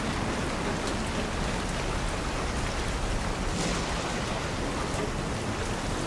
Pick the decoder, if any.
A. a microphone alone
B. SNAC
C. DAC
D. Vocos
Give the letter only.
A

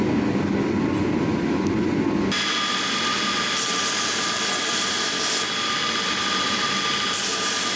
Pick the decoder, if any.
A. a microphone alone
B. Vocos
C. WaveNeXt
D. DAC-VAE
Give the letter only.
A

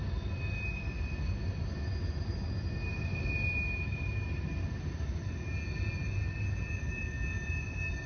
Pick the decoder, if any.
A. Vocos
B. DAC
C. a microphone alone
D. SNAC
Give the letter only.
C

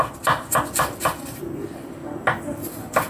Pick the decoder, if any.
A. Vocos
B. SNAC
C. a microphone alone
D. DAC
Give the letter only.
C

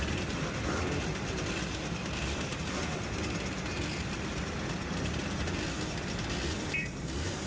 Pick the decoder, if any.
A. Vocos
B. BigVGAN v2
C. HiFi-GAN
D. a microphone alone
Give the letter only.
D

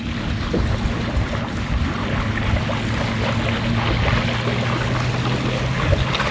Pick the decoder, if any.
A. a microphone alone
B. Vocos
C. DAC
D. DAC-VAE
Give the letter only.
A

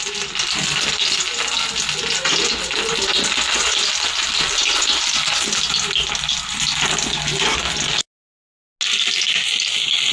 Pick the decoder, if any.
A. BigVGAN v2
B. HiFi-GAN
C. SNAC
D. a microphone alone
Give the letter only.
D